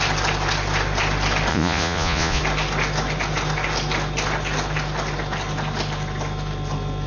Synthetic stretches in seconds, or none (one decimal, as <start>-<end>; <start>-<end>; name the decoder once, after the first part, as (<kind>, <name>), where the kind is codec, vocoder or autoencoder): 1.5-2.4 (vocoder, Vocos)